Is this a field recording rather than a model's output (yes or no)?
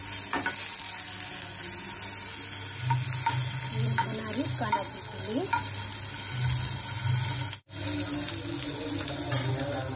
yes